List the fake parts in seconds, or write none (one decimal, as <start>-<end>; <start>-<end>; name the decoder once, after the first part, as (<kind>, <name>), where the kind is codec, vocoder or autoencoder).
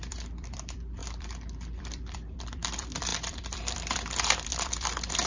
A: 0.0-5.3 (vocoder, BigVGAN v2)